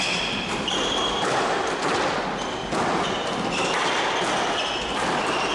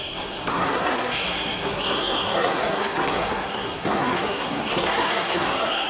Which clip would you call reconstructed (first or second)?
second